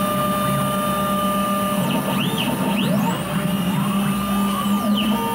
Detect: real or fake real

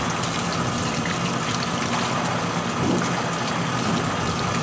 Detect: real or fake real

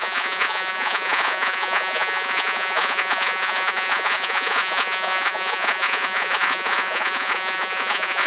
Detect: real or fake fake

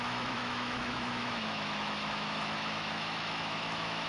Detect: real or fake fake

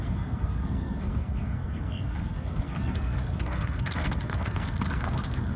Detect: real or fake fake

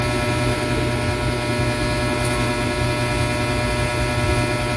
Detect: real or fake real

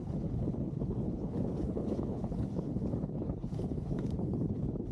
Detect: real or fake fake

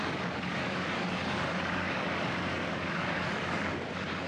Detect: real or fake fake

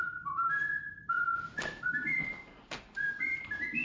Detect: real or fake real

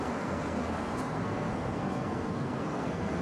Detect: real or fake fake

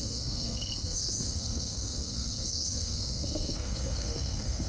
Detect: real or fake fake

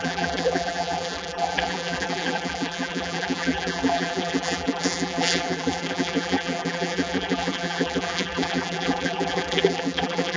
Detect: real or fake fake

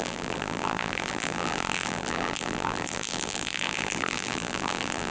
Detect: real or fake fake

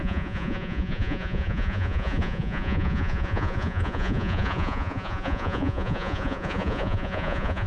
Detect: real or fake fake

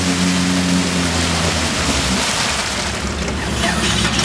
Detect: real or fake real